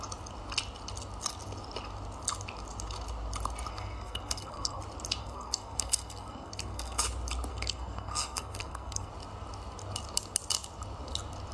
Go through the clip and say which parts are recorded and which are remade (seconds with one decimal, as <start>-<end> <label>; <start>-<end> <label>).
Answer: 0.0-3.7 recorded; 3.7-4.8 remade; 4.8-5.2 recorded; 5.2-7.0 remade; 7.0-7.5 recorded; 7.5-9.1 remade; 9.1-11.5 recorded